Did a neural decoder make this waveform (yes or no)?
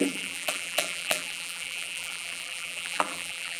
yes